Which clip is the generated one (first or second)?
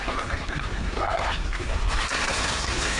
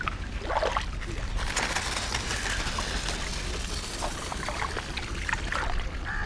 first